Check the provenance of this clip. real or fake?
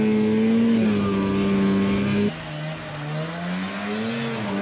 real